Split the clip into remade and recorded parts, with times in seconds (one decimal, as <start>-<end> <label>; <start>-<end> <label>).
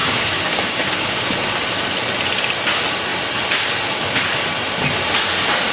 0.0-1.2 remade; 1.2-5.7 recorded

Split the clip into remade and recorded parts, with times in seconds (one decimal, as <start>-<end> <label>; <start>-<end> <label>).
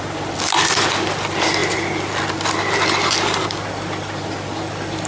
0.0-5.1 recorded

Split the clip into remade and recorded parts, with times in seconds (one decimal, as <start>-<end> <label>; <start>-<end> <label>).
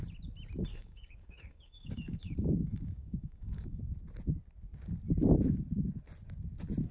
0.0-0.7 recorded; 0.7-3.8 remade; 3.8-6.9 recorded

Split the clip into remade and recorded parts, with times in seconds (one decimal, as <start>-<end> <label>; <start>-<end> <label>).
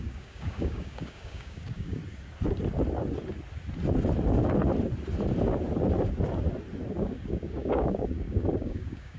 0.0-2.0 remade; 2.0-6.9 recorded; 6.9-9.2 remade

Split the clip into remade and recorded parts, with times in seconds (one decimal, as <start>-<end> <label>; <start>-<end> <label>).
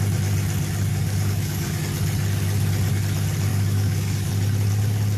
0.0-0.9 recorded; 0.9-1.8 remade; 1.8-3.5 recorded; 3.5-4.3 remade; 4.3-5.2 recorded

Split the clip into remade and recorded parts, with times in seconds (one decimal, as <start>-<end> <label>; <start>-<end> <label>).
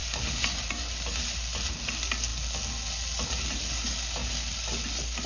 0.0-5.3 recorded